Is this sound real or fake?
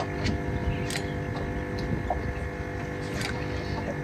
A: real